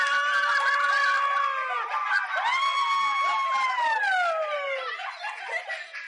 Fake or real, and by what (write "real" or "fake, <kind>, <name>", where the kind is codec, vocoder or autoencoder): real